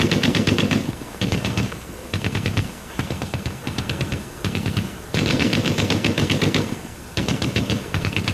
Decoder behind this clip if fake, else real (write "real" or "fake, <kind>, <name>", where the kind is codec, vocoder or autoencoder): fake, codec, SNAC